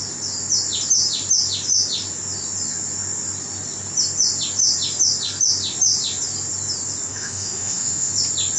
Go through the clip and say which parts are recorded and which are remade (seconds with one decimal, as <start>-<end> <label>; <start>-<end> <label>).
0.0-7.1 recorded; 7.1-8.1 remade; 8.1-8.6 recorded